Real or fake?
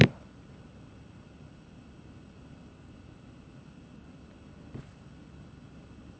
fake